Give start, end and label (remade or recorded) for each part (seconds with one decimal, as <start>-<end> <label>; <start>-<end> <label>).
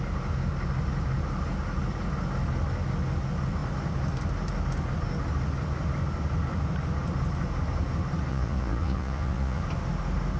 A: 0.0-8.3 recorded; 8.3-9.6 remade; 9.6-10.4 recorded